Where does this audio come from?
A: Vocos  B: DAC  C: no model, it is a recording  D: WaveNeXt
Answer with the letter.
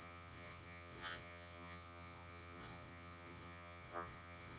D